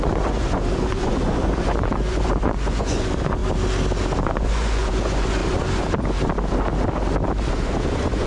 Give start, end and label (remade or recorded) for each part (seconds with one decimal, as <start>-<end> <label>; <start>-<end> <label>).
0.0-3.4 remade; 3.4-4.2 recorded; 4.2-5.4 remade; 5.4-7.4 recorded; 7.4-8.3 remade